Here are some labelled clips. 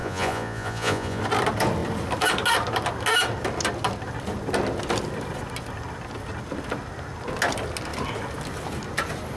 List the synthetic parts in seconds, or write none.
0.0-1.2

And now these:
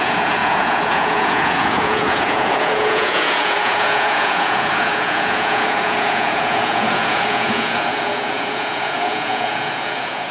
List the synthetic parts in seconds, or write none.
0.0-10.3

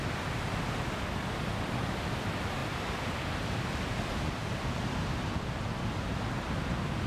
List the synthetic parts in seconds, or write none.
none

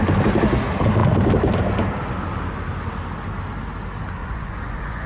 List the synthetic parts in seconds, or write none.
4.2-5.1

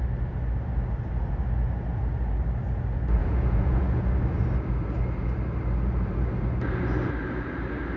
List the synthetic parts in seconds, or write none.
3.2-4.0

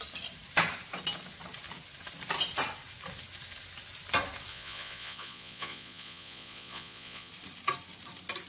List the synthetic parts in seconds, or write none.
4.5-7.3

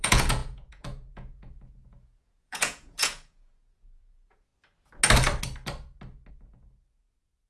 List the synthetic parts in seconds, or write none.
0.0-4.5; 6.3-7.5